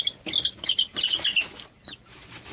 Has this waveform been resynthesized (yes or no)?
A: no